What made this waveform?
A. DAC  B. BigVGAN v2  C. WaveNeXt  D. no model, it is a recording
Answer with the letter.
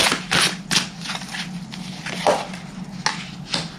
D